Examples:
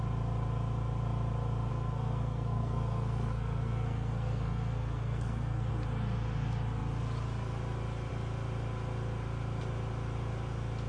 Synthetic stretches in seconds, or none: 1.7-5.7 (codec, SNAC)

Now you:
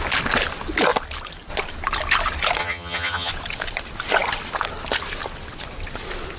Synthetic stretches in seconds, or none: 2.6-3.3 (vocoder, HiFi-GAN)

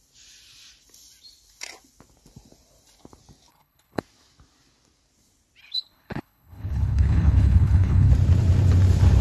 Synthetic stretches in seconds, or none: 3.5-4.0 (codec, HILCodec); 5.6-8.1